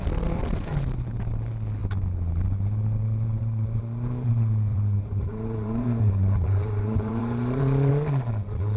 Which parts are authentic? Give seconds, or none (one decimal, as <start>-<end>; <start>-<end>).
0.0-4.7; 7.9-8.8